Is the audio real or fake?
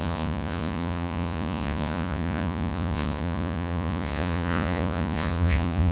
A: fake